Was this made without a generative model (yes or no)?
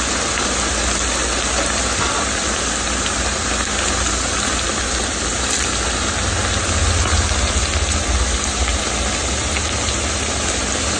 yes